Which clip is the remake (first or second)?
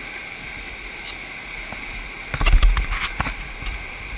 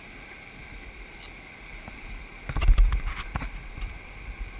second